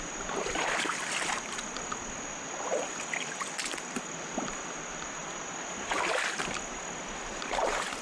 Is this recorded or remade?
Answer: remade